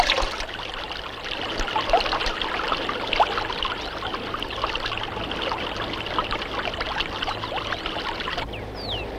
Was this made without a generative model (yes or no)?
yes